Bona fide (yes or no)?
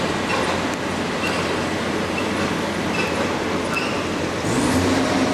yes